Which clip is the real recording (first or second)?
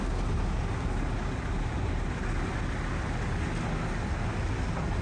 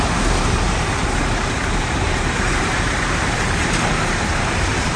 first